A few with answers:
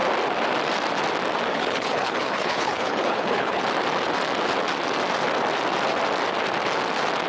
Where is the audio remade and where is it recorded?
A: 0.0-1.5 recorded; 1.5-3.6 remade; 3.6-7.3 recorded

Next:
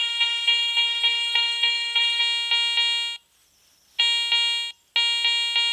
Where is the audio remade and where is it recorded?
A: 0.0-2.2 remade; 2.2-5.7 recorded

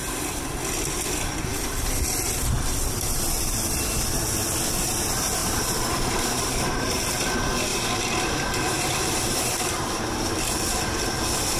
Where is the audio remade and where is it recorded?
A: 0.0-5.4 recorded; 5.4-7.1 remade; 7.1-7.7 recorded; 7.7-10.1 remade; 10.1-11.6 recorded

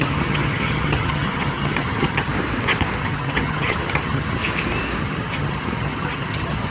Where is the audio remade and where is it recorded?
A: 0.0-2.3 remade; 2.3-3.0 recorded; 3.0-4.4 remade; 4.4-5.0 recorded; 5.0-6.7 remade

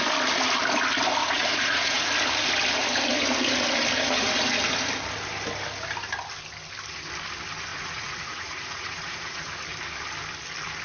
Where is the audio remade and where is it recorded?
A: 0.0-1.2 recorded; 1.2-2.1 remade; 2.1-7.7 recorded; 7.7-9.5 remade; 9.5-10.8 recorded

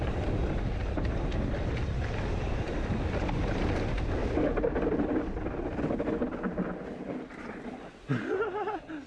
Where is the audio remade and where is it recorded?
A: 0.0-9.1 recorded

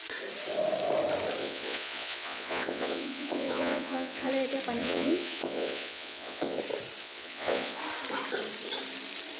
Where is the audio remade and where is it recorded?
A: 0.0-1.4 recorded; 1.4-4.3 remade; 4.3-4.8 recorded; 4.8-6.6 remade; 6.6-7.0 recorded; 7.0-7.8 remade; 7.8-9.4 recorded

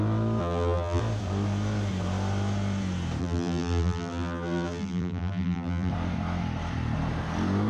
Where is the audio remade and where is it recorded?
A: 0.0-0.4 recorded; 0.4-1.0 remade; 1.0-3.2 recorded; 3.2-5.9 remade; 5.9-7.7 recorded